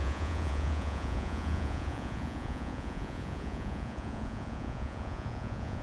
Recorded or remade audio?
remade